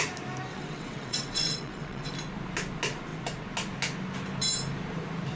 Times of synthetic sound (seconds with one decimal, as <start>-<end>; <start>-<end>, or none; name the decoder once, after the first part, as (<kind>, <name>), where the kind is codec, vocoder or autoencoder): 0.5-2.1 (vocoder, WaveNeXt)